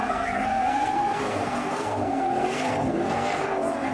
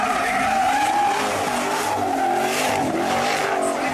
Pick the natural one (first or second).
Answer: second